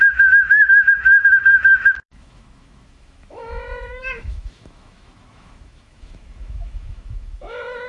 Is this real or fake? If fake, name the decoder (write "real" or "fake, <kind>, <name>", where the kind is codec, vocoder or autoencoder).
fake, autoencoder, DAC-VAE